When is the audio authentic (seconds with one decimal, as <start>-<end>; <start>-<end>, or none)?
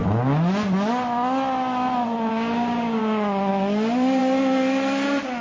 0.0-2.3; 3.0-5.4